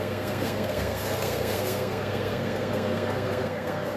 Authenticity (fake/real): fake